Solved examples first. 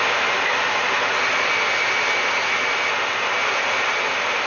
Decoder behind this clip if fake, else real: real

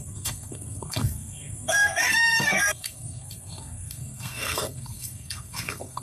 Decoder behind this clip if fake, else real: fake, codec, SNAC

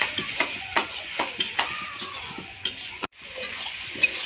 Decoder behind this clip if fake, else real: fake, vocoder, Vocos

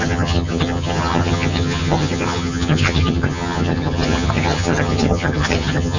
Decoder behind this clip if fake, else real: fake, vocoder, HiFi-GAN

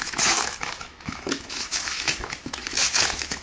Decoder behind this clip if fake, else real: fake, autoencoder, DAC-VAE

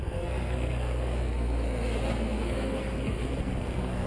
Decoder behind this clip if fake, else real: fake, codec, SNAC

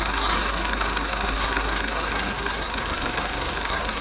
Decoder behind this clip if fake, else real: fake, codec, SNAC